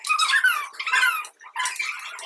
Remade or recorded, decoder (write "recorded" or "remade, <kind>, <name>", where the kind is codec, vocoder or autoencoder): recorded